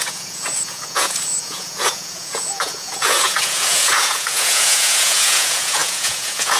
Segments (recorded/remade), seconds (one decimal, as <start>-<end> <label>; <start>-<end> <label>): 0.0-6.6 remade